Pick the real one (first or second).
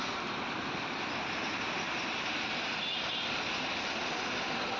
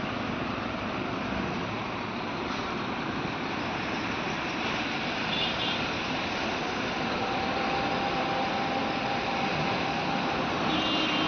first